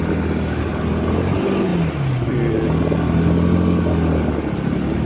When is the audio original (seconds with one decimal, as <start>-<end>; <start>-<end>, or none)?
0.0-5.1